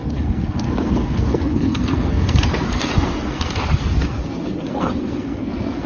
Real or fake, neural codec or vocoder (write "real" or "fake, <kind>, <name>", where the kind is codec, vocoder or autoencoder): fake, codec, SNAC